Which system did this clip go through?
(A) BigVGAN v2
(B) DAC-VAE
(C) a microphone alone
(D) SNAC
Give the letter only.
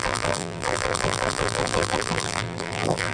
A